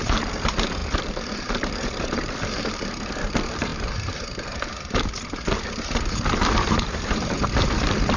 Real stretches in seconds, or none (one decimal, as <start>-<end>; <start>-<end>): none